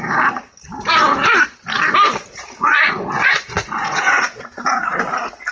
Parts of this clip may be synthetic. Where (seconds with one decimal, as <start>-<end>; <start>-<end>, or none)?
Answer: 2.6-4.8